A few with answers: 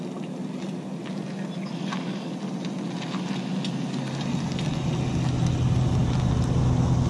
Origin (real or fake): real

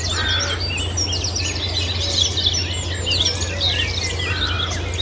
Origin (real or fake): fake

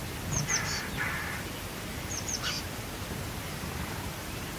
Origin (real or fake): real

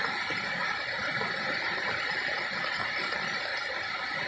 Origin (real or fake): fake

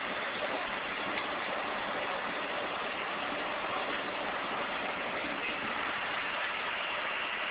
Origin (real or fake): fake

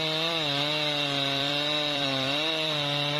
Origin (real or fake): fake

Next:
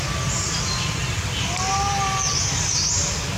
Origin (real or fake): real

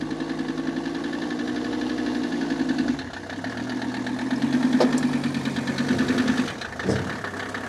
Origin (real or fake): real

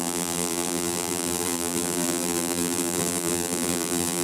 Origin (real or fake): fake